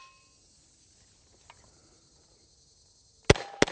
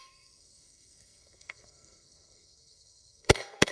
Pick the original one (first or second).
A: first